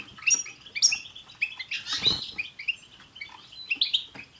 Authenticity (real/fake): real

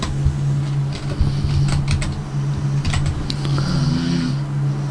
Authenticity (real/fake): real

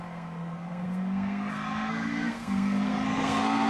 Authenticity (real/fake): fake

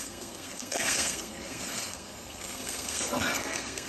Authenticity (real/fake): fake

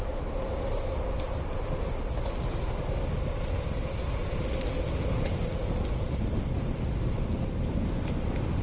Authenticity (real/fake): real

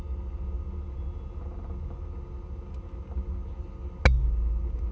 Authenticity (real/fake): real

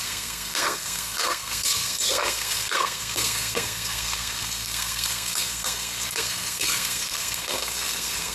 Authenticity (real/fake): fake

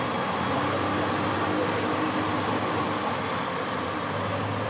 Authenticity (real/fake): real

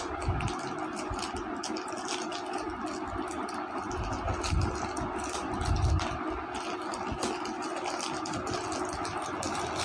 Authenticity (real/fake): real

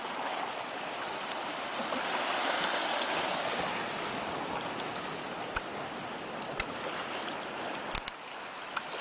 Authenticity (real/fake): real